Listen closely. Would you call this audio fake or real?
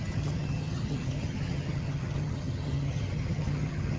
fake